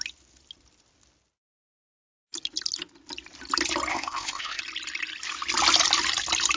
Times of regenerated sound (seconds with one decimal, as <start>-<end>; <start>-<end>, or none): 3.9-4.6